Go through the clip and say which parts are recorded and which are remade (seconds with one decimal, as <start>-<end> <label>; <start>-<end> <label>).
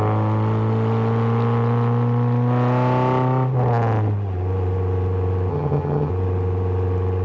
0.0-5.5 recorded; 5.5-6.1 remade; 6.1-7.2 recorded